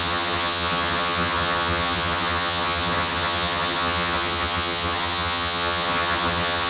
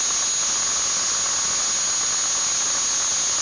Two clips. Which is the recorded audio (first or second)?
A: second